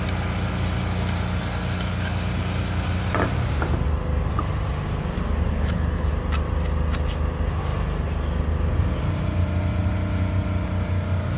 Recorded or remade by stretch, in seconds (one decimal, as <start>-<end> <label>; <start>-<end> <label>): 0.0-5.5 recorded; 5.5-6.1 remade; 6.1-11.4 recorded